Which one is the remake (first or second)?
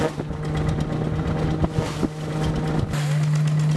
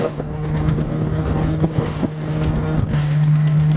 second